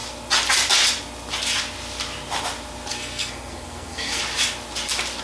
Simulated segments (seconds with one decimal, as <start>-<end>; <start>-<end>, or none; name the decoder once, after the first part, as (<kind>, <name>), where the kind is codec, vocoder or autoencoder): 2.9-4.2 (codec, SNAC)